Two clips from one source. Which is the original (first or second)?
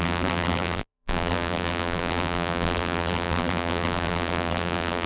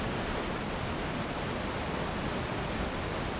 second